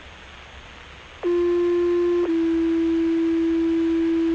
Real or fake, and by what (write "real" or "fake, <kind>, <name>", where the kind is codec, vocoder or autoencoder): real